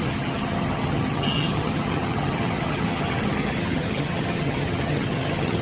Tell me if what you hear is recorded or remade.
remade